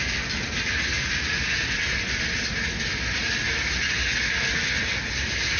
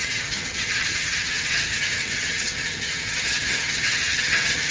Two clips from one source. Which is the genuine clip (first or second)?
first